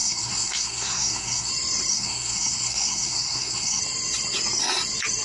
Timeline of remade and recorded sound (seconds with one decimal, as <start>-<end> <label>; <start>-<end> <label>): 0.0-1.5 remade; 1.5-1.9 recorded; 1.9-3.8 remade; 3.8-5.2 recorded